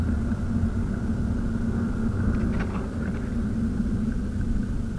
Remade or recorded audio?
recorded